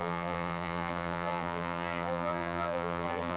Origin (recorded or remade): remade